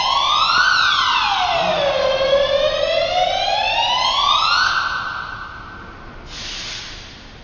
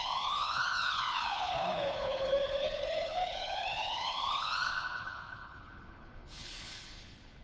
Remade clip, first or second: second